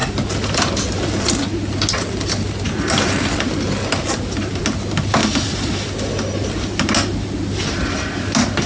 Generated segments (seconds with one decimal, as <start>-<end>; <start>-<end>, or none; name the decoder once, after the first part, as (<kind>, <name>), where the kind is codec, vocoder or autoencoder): none